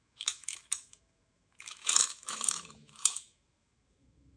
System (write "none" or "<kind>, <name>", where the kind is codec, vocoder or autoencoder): autoencoder, DAC-VAE